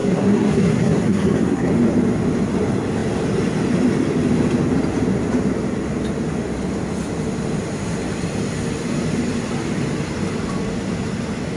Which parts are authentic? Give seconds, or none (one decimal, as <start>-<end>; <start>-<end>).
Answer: 1.7-11.6